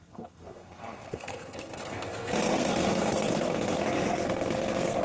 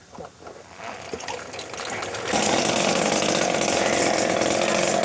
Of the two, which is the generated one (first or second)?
first